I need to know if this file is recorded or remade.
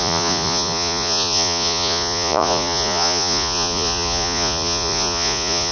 remade